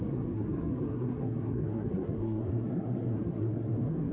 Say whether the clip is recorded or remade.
remade